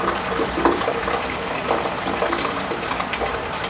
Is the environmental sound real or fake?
fake